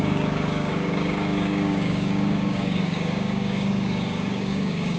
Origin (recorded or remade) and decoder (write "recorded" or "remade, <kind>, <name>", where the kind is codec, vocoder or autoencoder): remade, codec, DAC